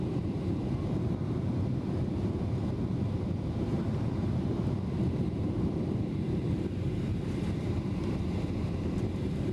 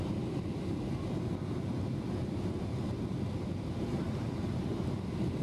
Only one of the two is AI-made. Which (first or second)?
first